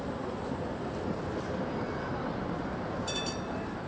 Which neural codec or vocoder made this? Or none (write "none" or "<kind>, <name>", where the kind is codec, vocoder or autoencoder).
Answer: none